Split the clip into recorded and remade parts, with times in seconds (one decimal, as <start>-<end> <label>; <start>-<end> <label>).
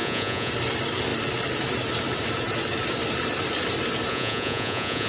0.0-0.5 remade; 0.5-4.1 recorded; 4.1-5.1 remade